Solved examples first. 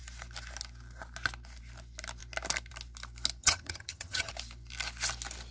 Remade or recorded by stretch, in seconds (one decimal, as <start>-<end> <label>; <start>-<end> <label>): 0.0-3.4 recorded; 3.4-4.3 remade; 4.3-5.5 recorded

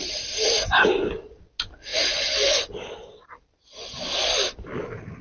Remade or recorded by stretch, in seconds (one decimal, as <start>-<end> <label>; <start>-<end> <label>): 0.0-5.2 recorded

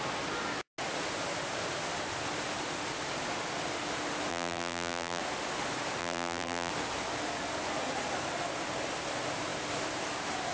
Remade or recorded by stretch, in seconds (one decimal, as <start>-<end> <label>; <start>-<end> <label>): 0.0-4.3 recorded; 4.3-5.2 remade; 5.2-6.0 recorded; 6.0-6.7 remade; 6.7-10.5 recorded